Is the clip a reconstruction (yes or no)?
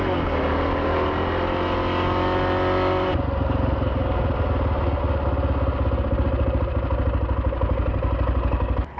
no